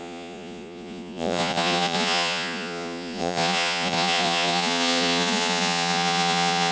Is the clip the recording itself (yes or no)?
no